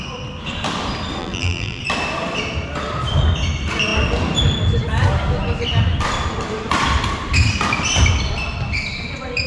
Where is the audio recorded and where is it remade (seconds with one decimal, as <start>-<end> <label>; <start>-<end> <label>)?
0.0-1.2 recorded; 1.2-1.8 remade; 1.8-9.5 recorded